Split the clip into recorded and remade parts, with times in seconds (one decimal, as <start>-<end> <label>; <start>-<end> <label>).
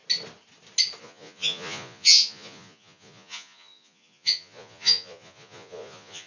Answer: 0.0-1.0 recorded; 1.0-6.3 remade